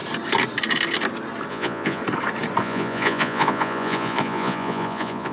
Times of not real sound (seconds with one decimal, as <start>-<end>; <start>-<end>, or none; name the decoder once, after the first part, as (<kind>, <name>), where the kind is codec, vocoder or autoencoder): 1.5-2.0 (vocoder, Vocos); 2.6-5.3